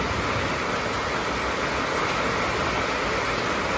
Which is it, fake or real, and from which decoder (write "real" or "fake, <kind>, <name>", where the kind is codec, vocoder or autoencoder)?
real